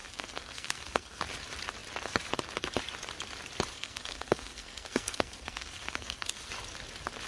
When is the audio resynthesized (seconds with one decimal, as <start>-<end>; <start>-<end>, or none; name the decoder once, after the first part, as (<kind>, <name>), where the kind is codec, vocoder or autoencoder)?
0.0-1.2 (codec, SNAC); 3.7-6.5